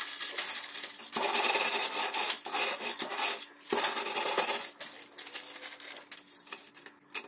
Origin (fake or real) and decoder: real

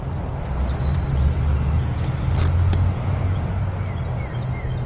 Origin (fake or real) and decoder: real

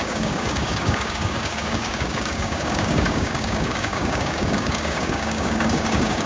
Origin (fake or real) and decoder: fake, codec, DAC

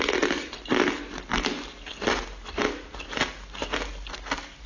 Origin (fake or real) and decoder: real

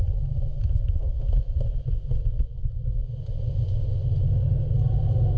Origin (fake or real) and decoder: real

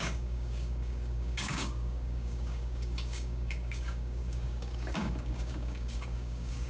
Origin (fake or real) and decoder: fake, codec, DAC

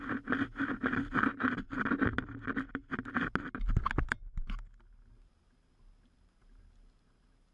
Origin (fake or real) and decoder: real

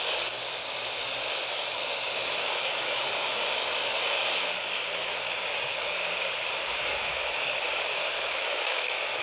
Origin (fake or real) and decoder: fake, codec, DAC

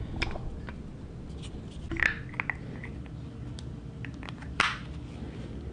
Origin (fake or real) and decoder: real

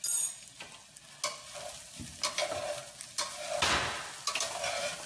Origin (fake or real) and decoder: real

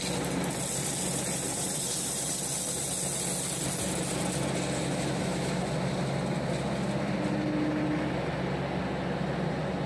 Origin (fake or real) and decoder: real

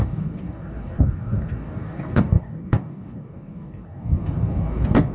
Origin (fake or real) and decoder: fake, codec, DAC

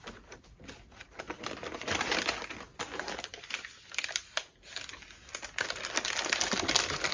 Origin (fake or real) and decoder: real